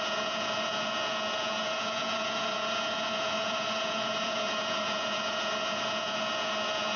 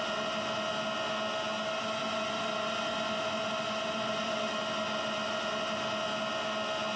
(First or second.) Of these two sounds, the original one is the second